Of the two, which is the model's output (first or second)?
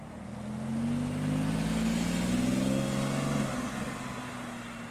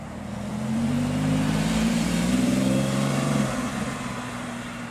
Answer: second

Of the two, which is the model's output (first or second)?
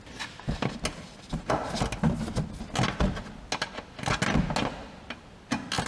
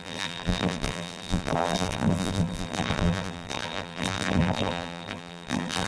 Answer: second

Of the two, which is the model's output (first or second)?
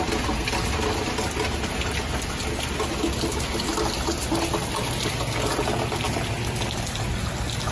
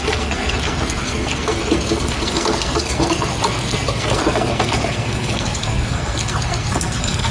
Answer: second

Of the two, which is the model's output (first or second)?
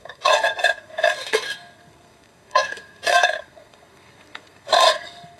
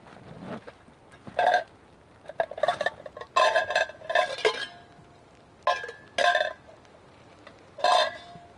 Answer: first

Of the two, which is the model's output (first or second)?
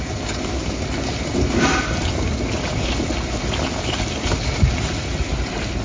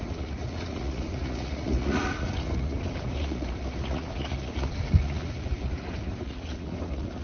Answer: second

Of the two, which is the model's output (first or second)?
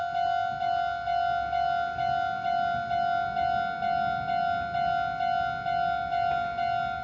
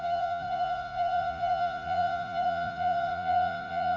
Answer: second